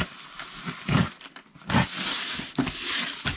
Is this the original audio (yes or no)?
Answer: yes